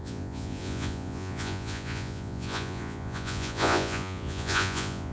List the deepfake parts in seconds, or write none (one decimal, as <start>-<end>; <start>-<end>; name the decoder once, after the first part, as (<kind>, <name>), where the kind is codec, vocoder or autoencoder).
0.0-5.1 (vocoder, Vocos)